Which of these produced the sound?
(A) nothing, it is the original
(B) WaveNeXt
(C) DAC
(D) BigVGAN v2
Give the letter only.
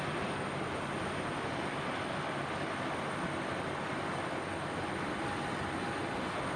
A